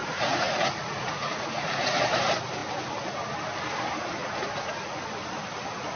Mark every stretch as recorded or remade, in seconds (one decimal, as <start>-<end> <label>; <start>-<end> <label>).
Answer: 0.0-2.1 remade; 2.1-4.2 recorded; 4.2-4.9 remade; 4.9-6.0 recorded